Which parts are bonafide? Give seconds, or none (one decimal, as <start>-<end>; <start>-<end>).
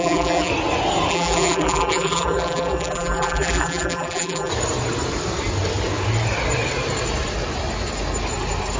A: 0.5-1.1; 4.5-8.8